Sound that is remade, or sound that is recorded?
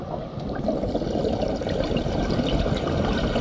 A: recorded